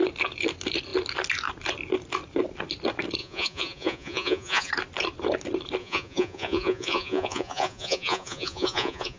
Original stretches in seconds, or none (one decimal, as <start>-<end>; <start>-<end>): 0.0-3.2; 4.7-5.8